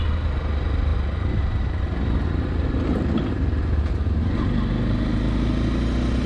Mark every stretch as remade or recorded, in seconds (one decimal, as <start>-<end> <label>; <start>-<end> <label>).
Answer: 0.0-6.3 recorded